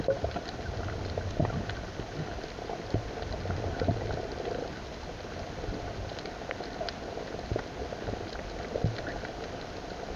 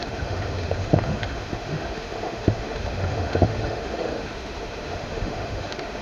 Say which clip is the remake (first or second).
second